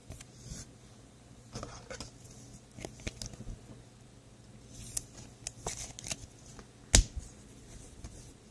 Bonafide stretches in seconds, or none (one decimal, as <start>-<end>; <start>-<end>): 1.8-8.5